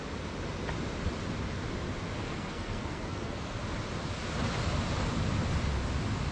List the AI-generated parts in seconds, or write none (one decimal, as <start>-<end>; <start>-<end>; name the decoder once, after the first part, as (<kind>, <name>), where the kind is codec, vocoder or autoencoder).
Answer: 2.2-3.6 (codec, SNAC)